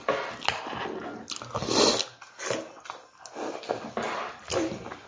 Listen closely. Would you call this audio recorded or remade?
recorded